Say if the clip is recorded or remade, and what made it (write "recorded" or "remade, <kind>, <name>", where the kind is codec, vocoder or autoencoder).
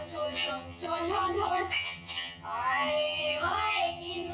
remade, vocoder, HiFi-GAN